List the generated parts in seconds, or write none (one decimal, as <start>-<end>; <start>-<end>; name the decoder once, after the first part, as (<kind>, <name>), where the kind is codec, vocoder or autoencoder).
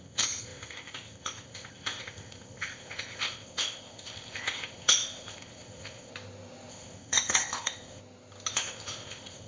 0.0-6.1 (codec, ZipCodec); 6.7-8.0; 8.5-9.5